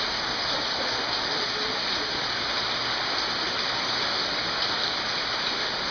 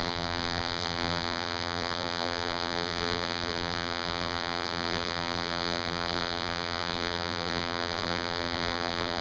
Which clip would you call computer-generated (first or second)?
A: second